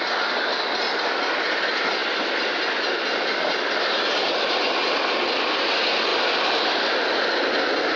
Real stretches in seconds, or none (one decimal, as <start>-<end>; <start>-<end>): 0.0-2.0; 3.7-6.1; 6.8-8.0